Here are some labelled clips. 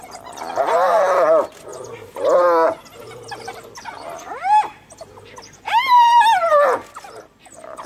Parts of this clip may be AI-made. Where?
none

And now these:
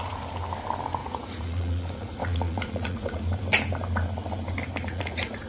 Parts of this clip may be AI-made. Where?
1.0-3.2 (vocoder, Vocos); 4.8-5.5

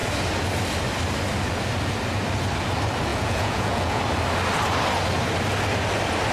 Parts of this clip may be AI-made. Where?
3.1-4.0 (vocoder, Vocos)